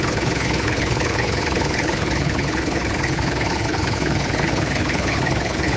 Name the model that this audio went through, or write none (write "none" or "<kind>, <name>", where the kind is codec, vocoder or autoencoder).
codec, HILCodec